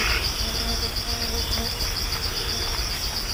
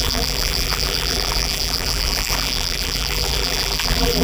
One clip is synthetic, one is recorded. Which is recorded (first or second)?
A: first